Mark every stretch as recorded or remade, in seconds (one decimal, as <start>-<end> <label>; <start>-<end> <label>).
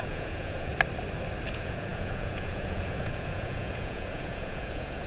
0.0-0.7 remade; 0.7-1.5 recorded; 1.5-5.1 remade